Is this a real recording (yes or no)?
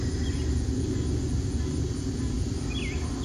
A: yes